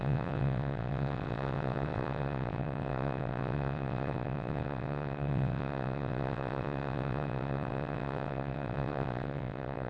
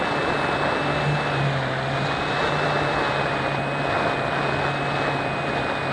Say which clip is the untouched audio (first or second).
second